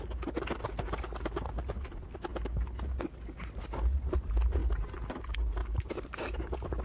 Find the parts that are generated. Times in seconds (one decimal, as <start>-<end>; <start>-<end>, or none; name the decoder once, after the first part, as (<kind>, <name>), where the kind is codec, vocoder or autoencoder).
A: 5.6-6.8 (vocoder, BigVGAN v2)